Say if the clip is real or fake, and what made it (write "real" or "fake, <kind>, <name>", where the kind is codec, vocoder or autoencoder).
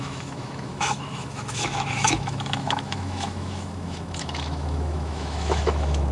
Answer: fake, autoencoder, DAC-VAE